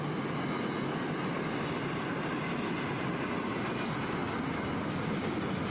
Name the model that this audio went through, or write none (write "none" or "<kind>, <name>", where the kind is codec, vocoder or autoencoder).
none